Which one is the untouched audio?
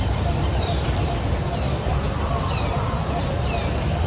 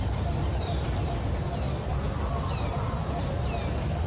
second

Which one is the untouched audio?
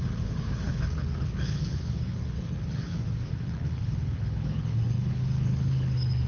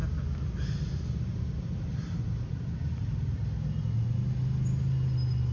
second